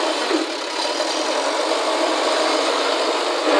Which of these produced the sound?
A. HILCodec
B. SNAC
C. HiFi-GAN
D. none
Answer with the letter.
D